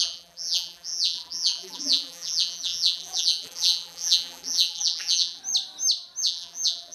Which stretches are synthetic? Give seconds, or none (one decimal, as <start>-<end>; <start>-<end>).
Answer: 0.0-5.4; 6.2-6.9